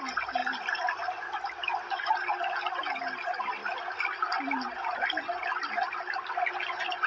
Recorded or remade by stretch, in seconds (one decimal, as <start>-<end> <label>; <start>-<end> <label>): 0.0-7.1 recorded